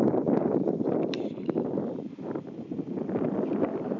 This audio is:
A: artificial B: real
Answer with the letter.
B